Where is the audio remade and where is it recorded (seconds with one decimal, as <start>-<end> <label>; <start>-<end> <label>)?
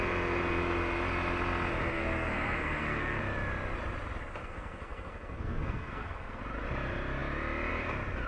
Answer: 0.0-1.9 recorded; 1.9-3.2 remade; 3.2-4.4 recorded; 4.4-6.4 remade; 6.4-8.3 recorded